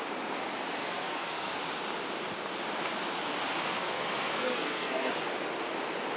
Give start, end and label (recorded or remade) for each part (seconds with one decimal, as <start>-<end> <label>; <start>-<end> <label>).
0.0-0.8 recorded; 0.8-1.6 remade; 1.6-3.7 recorded; 3.7-5.1 remade; 5.1-6.2 recorded